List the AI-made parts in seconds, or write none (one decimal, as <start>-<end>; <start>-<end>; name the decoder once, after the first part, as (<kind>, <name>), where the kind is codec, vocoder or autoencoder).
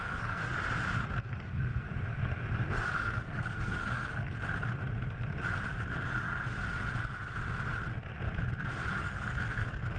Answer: 0.0-0.4 (codec, SNAC); 1.2-1.9; 2.7-4.4; 9.0-10.0